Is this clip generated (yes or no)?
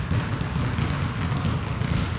no